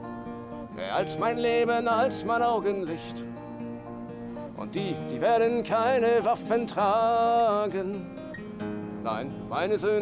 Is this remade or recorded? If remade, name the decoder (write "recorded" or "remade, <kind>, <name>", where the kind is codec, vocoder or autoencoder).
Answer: recorded